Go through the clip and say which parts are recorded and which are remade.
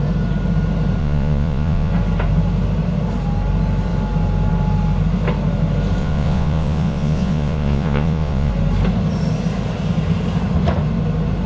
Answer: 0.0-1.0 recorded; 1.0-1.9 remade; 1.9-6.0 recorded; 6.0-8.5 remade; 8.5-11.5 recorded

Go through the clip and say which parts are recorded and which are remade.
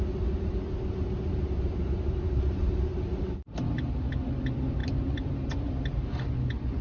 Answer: 0.0-6.8 recorded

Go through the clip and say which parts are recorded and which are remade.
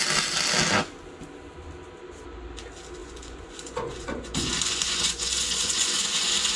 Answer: 0.0-3.0 recorded; 3.0-6.6 remade